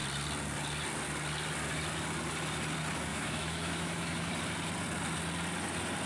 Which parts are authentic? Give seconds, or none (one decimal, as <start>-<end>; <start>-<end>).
0.0-3.1; 4.3-6.1